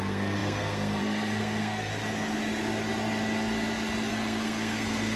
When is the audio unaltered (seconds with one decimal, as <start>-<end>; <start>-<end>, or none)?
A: 1.9-4.1